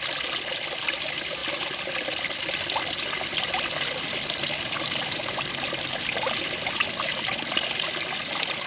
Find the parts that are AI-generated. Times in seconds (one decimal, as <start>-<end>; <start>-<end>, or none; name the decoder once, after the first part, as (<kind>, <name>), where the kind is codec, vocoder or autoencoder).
none